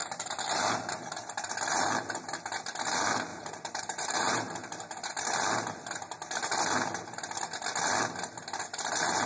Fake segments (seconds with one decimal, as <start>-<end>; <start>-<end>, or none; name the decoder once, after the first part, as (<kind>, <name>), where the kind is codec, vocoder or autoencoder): 0.0-1.5 (vocoder, BigVGAN v2); 3.3-5.2